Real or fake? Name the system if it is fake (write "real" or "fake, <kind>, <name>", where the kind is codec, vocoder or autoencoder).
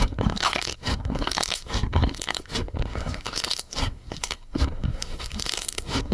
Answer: fake, codec, SNAC